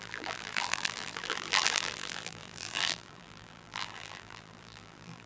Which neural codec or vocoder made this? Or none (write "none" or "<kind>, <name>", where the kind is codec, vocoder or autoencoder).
vocoder, BigVGAN v2